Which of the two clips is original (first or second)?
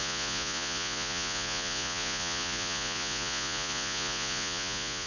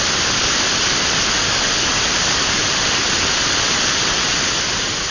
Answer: second